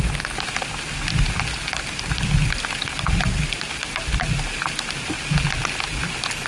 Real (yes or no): yes